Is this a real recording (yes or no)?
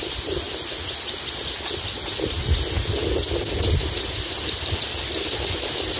yes